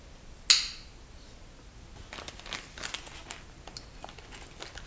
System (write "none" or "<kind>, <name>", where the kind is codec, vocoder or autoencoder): none